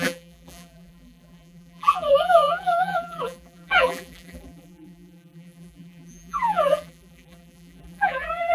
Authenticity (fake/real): fake